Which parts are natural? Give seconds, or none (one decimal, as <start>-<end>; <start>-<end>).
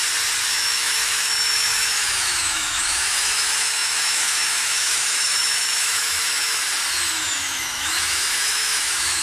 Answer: 0.0-0.5; 6.6-7.2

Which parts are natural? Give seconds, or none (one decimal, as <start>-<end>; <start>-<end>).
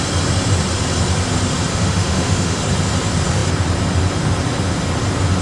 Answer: 0.0-1.7; 2.6-5.4